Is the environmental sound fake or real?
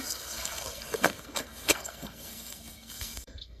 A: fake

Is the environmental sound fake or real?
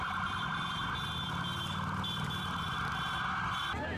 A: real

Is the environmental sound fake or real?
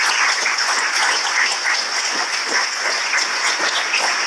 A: fake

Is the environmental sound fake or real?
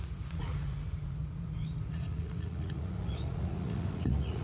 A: fake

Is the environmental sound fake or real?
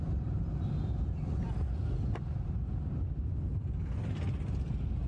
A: real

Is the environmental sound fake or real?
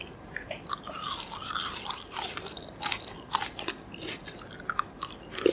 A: real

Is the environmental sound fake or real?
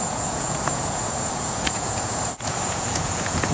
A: fake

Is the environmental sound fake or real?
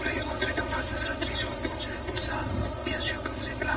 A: fake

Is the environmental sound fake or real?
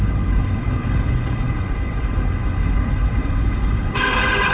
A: fake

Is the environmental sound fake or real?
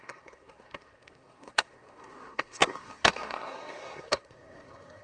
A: fake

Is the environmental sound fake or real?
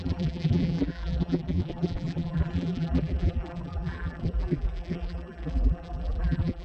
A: fake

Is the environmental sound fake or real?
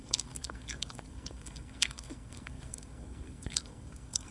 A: fake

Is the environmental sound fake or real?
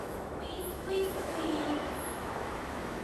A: fake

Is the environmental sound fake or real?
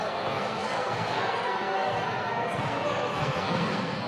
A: fake